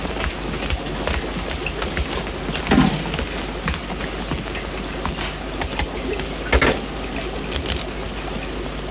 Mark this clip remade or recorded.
recorded